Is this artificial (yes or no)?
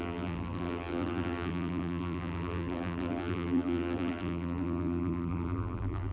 yes